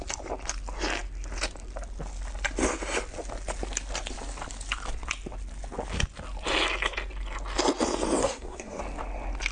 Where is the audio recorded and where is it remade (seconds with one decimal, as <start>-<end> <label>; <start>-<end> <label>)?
0.0-8.2 recorded; 8.2-8.8 remade; 8.8-9.5 recorded